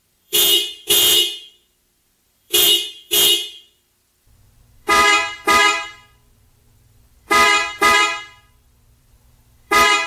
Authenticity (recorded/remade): remade